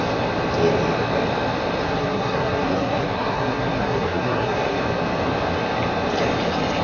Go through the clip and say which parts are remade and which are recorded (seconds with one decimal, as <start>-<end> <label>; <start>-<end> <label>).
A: 0.0-1.8 recorded; 1.8-4.8 remade; 4.8-6.8 recorded